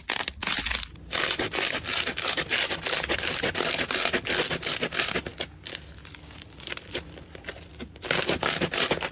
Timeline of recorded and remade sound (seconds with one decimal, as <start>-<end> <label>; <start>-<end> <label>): 0.0-9.1 recorded